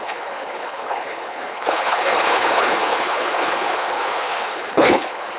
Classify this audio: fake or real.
fake